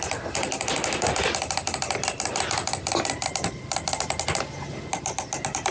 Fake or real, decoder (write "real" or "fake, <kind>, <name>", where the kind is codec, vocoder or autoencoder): real